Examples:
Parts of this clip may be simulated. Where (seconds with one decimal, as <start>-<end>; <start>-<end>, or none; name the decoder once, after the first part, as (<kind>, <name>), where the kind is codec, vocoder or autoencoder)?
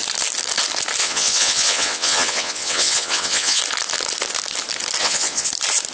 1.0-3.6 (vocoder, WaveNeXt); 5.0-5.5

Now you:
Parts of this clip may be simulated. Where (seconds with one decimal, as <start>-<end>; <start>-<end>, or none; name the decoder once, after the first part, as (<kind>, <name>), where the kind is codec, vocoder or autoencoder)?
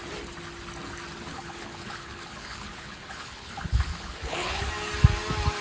1.3-4.7 (codec, HILCodec)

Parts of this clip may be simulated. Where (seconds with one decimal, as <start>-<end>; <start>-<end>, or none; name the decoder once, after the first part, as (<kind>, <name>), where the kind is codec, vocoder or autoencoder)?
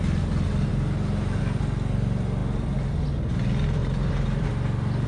0.7-1.4 (vocoder, BigVGAN v2); 3.8-4.5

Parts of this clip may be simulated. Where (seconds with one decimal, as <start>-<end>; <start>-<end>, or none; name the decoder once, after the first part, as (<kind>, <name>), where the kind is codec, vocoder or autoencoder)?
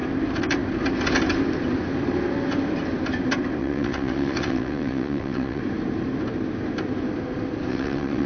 3.6-5.6 (vocoder, WaveNeXt); 7.7-8.3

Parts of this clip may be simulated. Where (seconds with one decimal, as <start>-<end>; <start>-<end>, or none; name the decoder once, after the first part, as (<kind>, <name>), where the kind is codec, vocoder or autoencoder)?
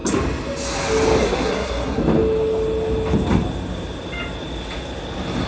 1.2-2.0 (codec, SNAC)